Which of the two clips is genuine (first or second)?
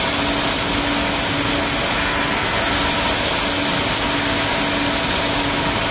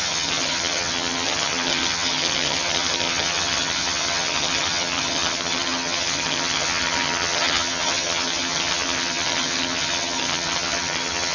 first